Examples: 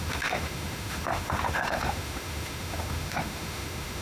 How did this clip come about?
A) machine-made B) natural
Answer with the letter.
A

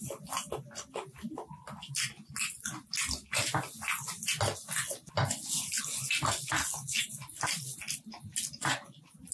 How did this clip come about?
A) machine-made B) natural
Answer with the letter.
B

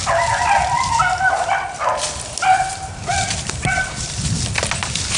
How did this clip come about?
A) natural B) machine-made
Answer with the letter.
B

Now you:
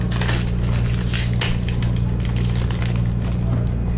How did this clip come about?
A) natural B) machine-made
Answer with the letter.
A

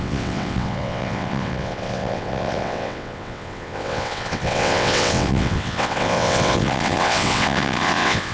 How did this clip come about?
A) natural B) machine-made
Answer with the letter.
B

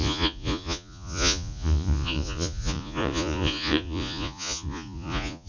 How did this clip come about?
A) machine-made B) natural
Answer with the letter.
A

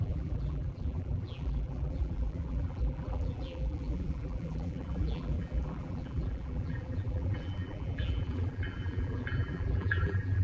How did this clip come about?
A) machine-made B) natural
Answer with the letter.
A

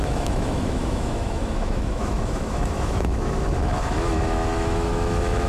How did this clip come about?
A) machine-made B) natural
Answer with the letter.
A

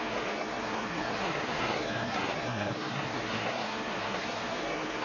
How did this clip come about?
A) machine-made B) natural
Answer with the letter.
A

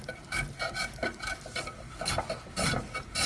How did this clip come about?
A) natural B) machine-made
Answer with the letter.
B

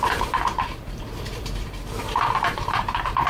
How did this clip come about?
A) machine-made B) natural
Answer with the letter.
A